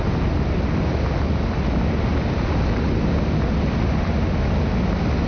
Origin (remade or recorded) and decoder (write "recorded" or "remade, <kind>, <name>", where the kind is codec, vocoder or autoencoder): recorded